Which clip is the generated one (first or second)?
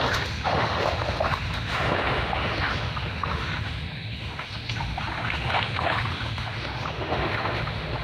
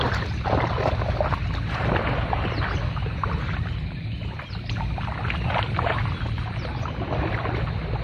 first